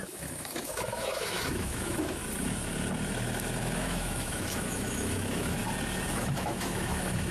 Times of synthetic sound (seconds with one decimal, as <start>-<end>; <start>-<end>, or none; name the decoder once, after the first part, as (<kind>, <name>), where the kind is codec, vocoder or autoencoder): 0.0-2.2 (autoencoder, DAC-VAE); 3.6-5.6; 6.1-7.3